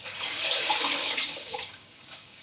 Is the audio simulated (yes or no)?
yes